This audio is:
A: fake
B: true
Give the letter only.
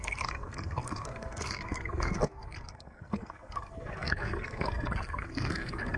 A